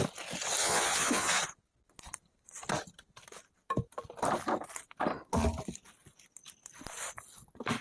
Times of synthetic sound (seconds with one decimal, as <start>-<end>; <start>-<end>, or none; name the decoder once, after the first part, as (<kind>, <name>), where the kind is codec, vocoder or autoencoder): 0.6-1.4 (vocoder, Vocos)